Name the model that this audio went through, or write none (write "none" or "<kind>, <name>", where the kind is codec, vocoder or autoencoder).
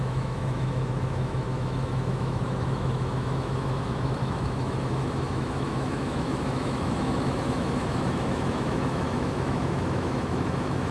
autoencoder, DAC-VAE